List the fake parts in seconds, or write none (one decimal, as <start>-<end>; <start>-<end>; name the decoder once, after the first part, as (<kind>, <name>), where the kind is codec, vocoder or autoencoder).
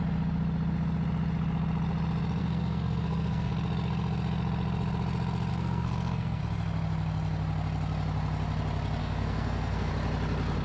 2.4-3.5 (codec, SNAC); 5.5-6.4; 9.0-9.9